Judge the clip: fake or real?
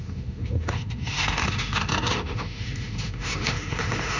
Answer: fake